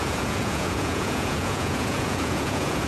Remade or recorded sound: remade